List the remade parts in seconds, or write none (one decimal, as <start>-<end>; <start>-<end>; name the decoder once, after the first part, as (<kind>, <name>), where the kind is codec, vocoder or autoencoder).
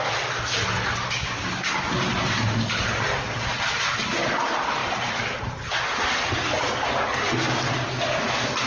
none